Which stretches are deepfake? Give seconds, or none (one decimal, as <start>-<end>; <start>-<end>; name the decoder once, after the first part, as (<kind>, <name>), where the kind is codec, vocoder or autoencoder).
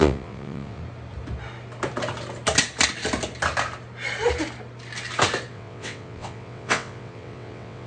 0.0-0.8 (vocoder, WaveNeXt); 5.5-7.9